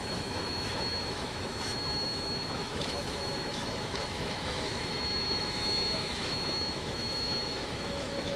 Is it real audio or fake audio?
fake